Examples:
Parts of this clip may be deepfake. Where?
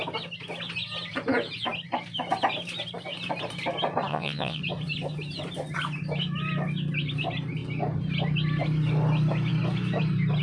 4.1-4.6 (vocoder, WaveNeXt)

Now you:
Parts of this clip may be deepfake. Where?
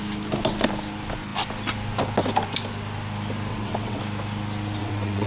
3.5-4.0 (vocoder, WaveNeXt); 4.8-5.3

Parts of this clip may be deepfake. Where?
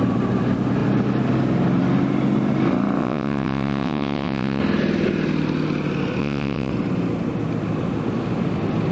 3.0-4.6 (vocoder, WaveNeXt); 6.2-6.7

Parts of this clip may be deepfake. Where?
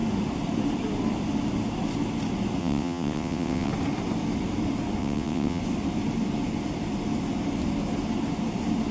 2.6-3.7 (vocoder, WaveNeXt); 5.0-5.6